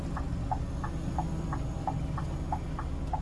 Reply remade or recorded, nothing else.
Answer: recorded